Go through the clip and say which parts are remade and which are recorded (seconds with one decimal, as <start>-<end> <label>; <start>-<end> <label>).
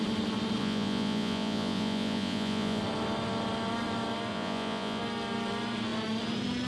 0.0-0.6 recorded; 0.6-2.8 remade; 2.8-4.3 recorded; 4.3-5.0 remade; 5.0-6.7 recorded